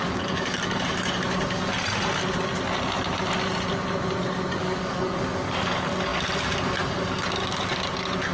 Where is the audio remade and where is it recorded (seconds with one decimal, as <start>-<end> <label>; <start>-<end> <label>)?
0.0-1.7 remade; 1.7-4.6 recorded; 4.6-8.3 remade